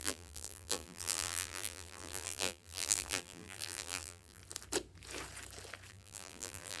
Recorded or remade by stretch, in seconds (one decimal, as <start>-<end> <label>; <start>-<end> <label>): 0.0-4.4 remade; 4.4-5.9 recorded; 5.9-6.8 remade